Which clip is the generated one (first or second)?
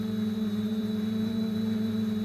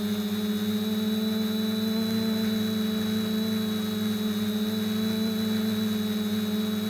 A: first